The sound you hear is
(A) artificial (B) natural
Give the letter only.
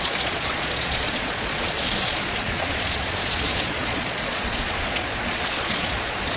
A